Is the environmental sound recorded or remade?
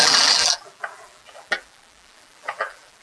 remade